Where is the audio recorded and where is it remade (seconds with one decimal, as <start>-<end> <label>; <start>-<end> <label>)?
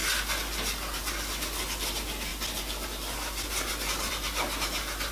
0.0-5.1 recorded